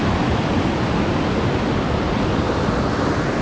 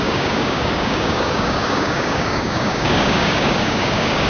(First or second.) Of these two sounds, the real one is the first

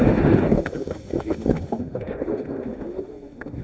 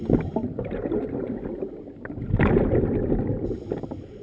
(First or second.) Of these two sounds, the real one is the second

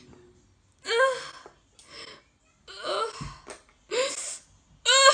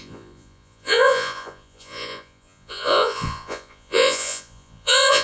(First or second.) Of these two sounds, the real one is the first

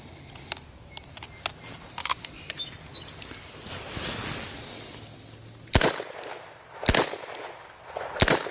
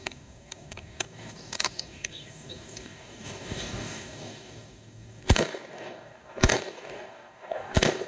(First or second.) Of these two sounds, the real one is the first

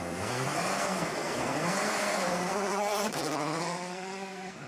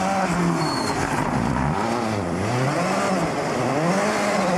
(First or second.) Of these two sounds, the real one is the second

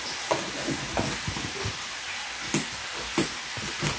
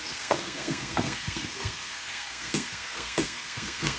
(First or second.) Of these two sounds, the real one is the first